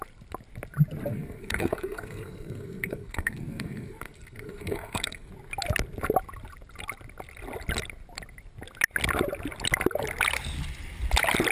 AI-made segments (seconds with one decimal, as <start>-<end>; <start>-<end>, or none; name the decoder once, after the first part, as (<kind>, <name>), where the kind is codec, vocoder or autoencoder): 1.1-5.3 (codec, SNAC)